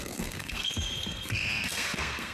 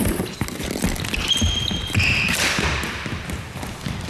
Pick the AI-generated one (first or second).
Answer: first